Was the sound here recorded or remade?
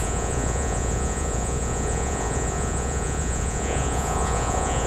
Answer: remade